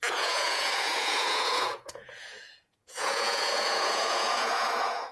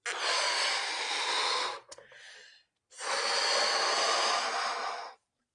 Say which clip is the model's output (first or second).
first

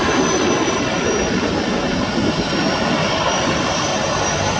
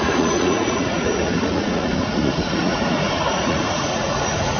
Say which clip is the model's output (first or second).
second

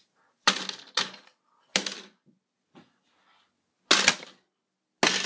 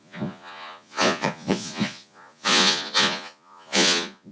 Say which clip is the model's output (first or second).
second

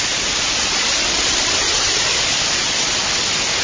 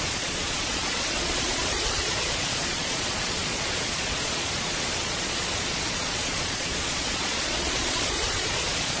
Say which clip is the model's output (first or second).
second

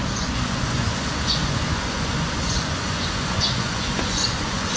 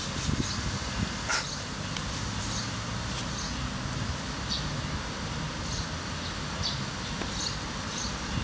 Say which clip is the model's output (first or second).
first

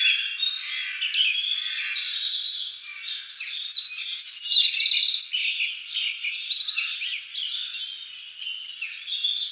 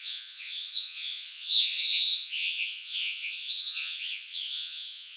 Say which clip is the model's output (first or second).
second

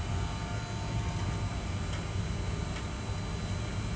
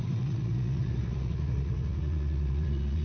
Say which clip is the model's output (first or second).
second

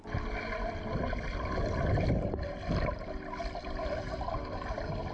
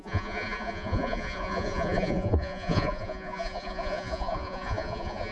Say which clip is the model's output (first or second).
second